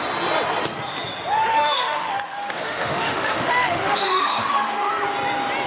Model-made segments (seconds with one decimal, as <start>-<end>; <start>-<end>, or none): 1.5-4.9